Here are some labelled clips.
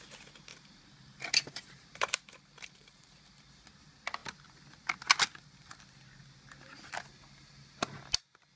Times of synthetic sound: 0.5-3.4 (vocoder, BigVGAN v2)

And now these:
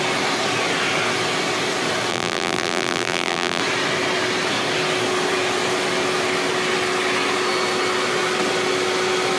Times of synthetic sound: 2.1-3.6 (vocoder, BigVGAN v2)

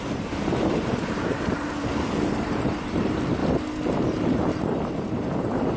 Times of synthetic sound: 0.0-3.4 (vocoder, BigVGAN v2); 3.9-5.8

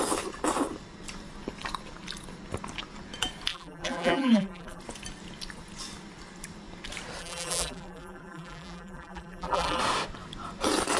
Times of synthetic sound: 3.5-4.8 (vocoder, BigVGAN v2); 7.2-9.8

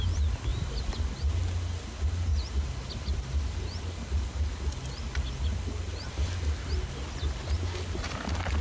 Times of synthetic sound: none